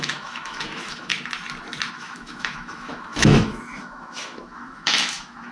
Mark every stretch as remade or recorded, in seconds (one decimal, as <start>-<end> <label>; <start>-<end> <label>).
0.0-1.1 remade; 1.1-1.9 recorded; 1.9-5.5 remade